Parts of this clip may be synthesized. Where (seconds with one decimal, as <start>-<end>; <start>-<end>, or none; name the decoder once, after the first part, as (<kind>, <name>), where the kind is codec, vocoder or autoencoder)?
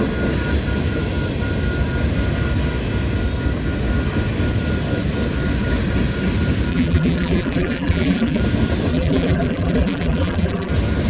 6.7-8.4 (vocoder, BigVGAN v2); 8.9-10.7